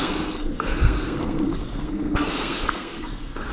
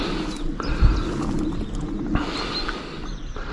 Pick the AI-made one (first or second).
first